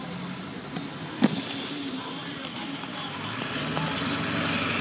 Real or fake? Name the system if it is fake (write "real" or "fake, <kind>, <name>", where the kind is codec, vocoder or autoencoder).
real